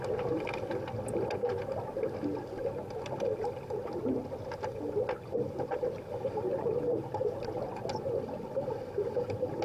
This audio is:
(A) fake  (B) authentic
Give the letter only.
B